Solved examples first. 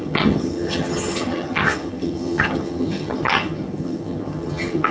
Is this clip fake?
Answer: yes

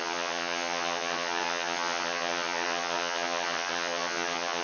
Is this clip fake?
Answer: yes